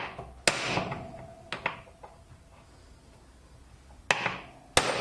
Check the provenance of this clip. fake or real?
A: real